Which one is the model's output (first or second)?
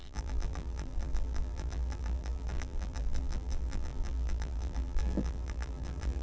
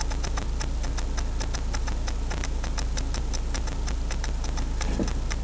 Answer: first